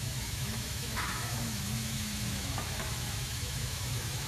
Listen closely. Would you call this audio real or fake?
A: fake